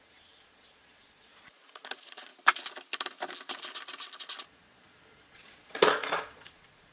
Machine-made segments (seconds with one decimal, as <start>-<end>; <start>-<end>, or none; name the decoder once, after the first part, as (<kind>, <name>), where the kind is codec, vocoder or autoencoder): 0.0-2.3 (vocoder, Vocos); 4.4-6.9